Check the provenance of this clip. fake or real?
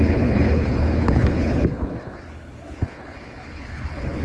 fake